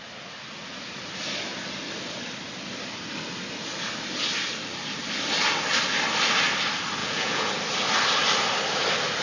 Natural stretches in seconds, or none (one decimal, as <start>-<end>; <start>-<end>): 0.0-7.0; 7.5-9.2